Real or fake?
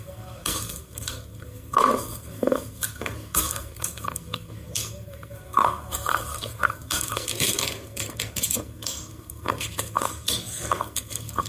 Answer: fake